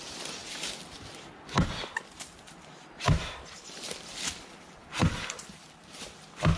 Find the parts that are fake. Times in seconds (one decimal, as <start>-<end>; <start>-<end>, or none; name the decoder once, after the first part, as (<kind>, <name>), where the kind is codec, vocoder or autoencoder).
4.8-6.0 (vocoder, BigVGAN v2)